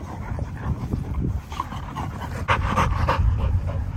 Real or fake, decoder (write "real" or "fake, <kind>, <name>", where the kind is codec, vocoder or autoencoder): fake, vocoder, BigVGAN v2